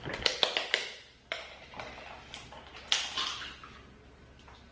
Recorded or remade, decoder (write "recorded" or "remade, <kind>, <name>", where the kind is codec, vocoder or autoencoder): recorded